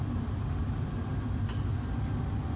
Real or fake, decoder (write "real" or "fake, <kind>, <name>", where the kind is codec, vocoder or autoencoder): real